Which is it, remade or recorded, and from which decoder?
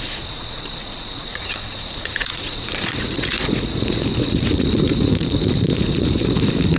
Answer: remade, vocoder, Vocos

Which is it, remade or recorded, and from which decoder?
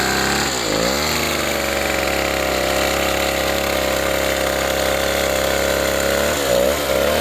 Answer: recorded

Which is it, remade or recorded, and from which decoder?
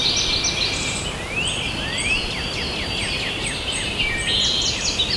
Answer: recorded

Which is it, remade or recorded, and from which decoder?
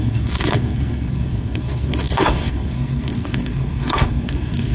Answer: remade, codec, SNAC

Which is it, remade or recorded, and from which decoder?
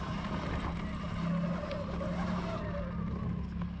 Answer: recorded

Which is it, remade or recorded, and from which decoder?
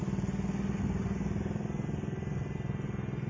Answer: recorded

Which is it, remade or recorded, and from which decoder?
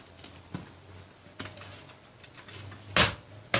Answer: recorded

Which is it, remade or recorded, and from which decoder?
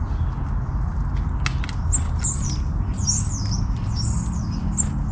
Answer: recorded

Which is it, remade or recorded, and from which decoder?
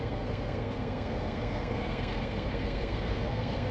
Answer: remade, codec, SNAC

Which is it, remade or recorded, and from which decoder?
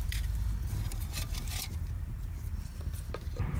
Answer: remade, vocoder, BigVGAN v2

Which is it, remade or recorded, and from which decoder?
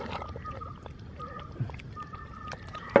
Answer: recorded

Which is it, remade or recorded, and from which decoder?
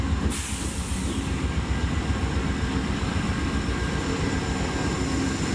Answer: recorded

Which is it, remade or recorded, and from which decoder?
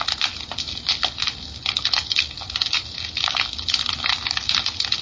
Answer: recorded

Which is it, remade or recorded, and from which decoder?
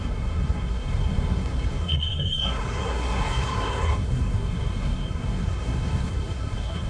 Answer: remade, codec, SNAC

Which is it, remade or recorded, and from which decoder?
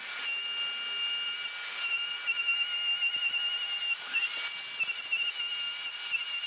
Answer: recorded